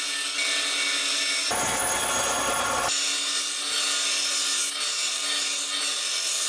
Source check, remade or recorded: recorded